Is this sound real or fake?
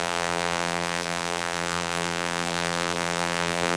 fake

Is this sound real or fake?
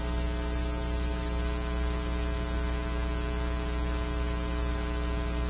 real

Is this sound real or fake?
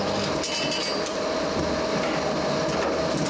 real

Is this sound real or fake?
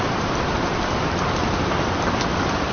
real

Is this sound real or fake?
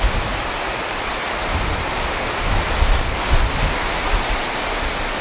real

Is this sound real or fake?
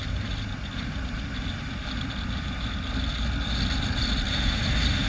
real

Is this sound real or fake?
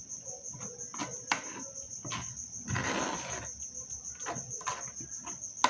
real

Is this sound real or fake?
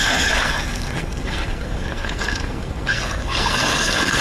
fake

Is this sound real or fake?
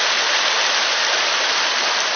real